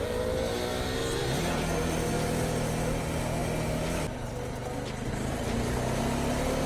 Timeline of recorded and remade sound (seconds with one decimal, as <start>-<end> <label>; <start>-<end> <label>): 0.0-6.7 recorded